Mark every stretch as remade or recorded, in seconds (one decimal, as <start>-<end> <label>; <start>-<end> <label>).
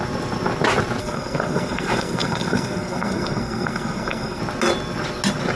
0.0-1.0 recorded; 1.0-4.4 remade; 4.4-5.6 recorded